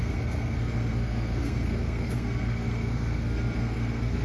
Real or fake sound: fake